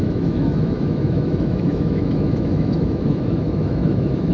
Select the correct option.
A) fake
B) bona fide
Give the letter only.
A